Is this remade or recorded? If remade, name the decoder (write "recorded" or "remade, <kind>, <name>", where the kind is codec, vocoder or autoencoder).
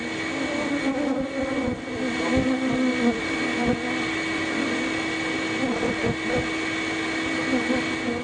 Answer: recorded